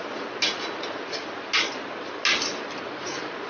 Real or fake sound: real